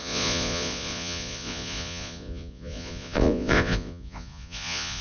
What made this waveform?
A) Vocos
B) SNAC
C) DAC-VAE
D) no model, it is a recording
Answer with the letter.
A